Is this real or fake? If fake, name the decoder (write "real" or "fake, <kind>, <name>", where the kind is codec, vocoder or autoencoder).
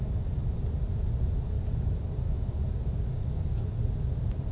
real